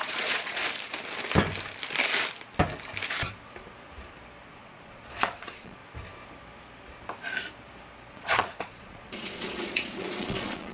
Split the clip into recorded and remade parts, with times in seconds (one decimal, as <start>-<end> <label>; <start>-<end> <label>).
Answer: 0.0-0.6 remade; 0.6-4.5 recorded; 4.5-5.8 remade; 5.8-8.1 recorded; 8.1-10.7 remade